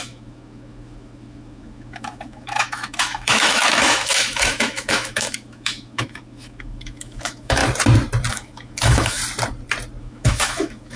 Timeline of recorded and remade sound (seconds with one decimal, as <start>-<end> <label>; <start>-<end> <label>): 0.0-7.6 remade; 7.6-8.3 recorded; 8.3-9.2 remade; 9.2-10.0 recorded; 10.0-11.0 remade

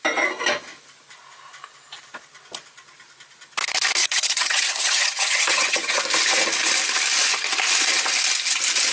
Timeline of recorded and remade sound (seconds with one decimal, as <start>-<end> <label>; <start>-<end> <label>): 0.0-4.0 recorded; 4.0-6.0 remade; 6.0-8.9 recorded

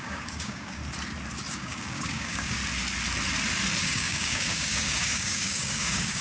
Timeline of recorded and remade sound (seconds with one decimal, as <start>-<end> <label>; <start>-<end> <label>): 0.0-0.8 remade; 0.8-1.5 recorded; 1.5-2.6 remade; 2.6-3.8 recorded; 3.8-6.2 remade

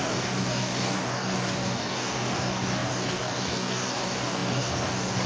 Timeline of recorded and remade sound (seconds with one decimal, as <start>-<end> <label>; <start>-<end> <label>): 0.0-5.3 remade

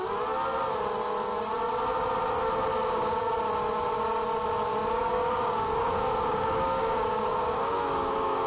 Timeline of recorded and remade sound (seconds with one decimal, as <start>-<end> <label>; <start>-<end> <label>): 0.0-2.7 recorded; 2.7-3.3 remade; 3.3-4.7 recorded; 4.7-8.5 remade